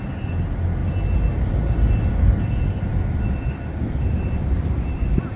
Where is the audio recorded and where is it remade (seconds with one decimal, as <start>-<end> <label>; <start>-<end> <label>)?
0.0-5.4 recorded